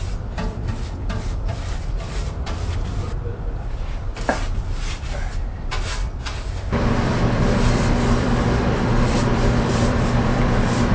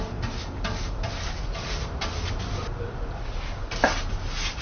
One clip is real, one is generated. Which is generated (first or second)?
first